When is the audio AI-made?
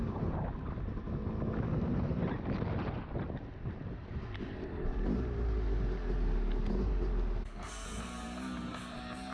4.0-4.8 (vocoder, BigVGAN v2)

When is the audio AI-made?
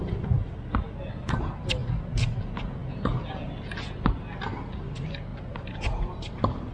5.3-6.7 (vocoder, BigVGAN v2)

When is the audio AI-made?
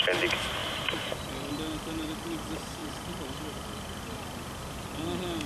0.6-1.5 (vocoder, BigVGAN v2); 2.8-4.0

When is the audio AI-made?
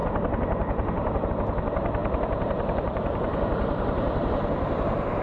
0.0-1.3 (vocoder, BigVGAN v2); 2.0-5.2